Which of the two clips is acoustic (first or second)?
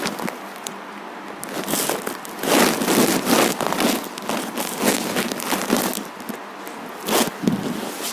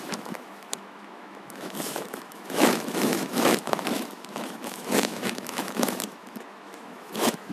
first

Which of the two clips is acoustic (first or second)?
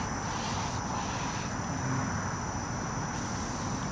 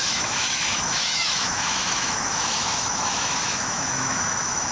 first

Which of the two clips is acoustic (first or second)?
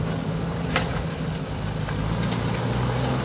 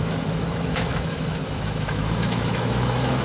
first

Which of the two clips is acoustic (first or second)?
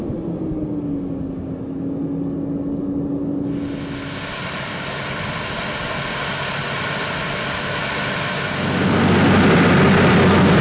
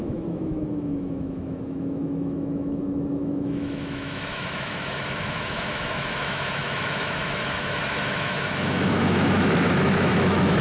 first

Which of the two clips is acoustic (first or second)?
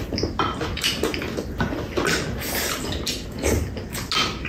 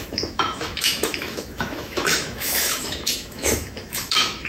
first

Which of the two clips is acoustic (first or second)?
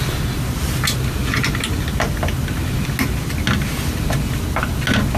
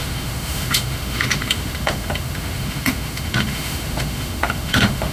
first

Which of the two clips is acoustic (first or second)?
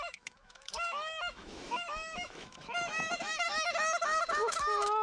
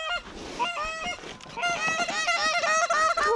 second